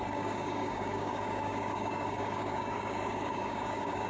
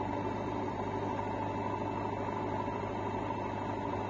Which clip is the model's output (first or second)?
first